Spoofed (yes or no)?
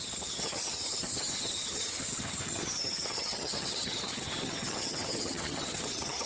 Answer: yes